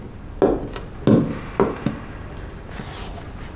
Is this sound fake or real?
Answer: real